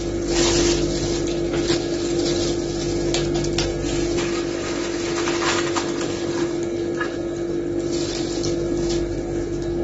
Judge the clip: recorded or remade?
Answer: recorded